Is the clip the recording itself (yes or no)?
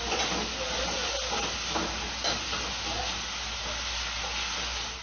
yes